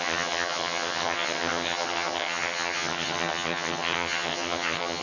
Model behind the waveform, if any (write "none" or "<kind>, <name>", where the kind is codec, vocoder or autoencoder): vocoder, HiFi-GAN